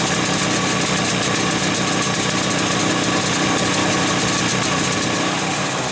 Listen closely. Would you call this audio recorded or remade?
recorded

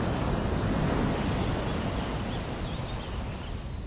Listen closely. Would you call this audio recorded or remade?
recorded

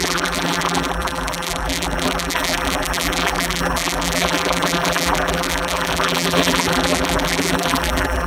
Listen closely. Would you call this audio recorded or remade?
remade